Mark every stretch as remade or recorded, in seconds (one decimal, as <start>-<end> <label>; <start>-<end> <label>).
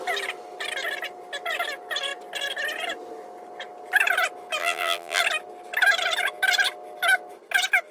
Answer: 0.0-4.6 recorded; 4.6-5.2 remade; 5.2-7.9 recorded